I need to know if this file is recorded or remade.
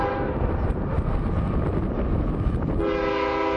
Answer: recorded